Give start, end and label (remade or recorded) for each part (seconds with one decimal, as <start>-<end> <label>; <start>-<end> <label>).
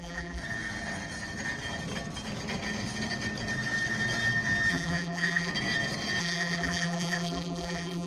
0.0-0.4 remade; 0.4-4.7 recorded; 4.7-5.5 remade; 5.5-6.2 recorded; 6.2-8.1 remade